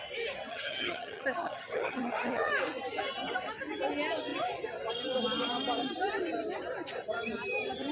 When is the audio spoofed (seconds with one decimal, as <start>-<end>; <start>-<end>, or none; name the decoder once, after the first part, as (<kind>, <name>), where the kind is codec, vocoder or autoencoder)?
0.5-2.5 (vocoder, HiFi-GAN)